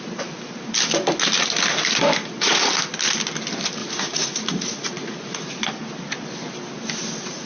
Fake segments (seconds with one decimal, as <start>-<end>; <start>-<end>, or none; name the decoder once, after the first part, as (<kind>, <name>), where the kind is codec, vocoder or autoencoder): 2.2-2.7 (vocoder, Vocos); 3.8-5.4